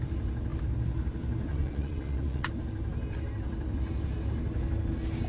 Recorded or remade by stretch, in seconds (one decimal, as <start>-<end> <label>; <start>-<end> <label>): 0.0-1.5 recorded; 1.5-2.5 remade; 2.5-5.3 recorded